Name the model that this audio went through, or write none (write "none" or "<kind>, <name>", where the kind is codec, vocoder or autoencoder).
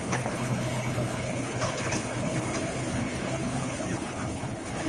codec, HILCodec